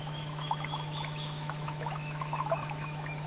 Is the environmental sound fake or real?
fake